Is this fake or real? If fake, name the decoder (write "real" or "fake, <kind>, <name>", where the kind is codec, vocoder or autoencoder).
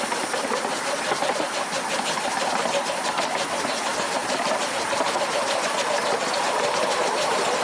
real